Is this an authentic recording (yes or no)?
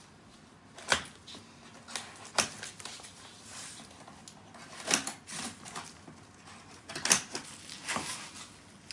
yes